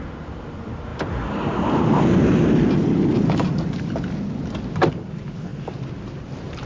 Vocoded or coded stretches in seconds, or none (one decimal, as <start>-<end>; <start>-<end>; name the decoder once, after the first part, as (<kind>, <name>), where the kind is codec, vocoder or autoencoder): none